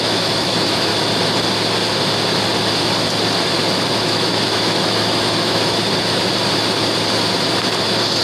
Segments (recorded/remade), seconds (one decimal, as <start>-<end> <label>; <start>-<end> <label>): 0.0-0.9 remade; 0.9-3.9 recorded; 3.9-5.8 remade; 5.8-8.2 recorded